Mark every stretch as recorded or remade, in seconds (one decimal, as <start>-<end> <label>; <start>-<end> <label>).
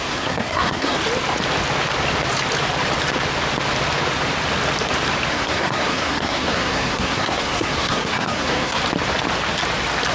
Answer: 0.0-1.0 remade; 1.0-5.3 recorded; 5.3-8.8 remade; 8.8-10.1 recorded